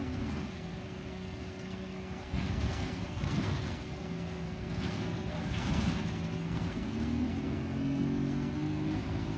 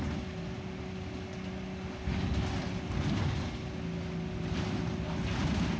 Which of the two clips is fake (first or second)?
first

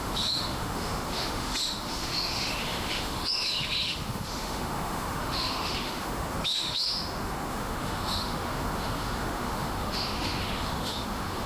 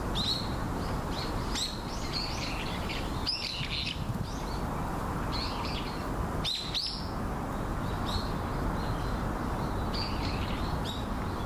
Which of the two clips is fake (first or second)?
first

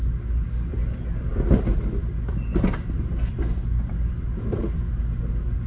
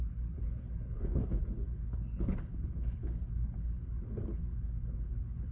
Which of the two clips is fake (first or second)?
second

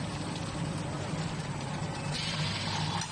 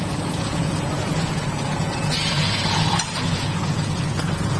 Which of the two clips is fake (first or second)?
second